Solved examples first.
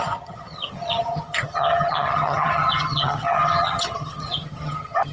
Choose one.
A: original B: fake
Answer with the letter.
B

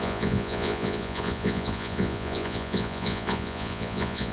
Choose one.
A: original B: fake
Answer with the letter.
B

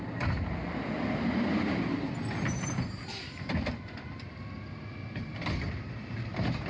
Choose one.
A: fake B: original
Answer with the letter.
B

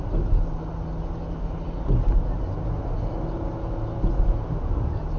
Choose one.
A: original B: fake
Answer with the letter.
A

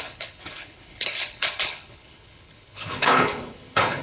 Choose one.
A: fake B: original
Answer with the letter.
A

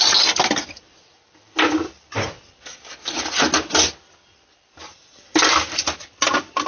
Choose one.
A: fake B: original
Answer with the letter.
B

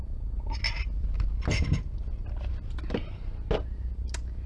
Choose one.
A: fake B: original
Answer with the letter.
B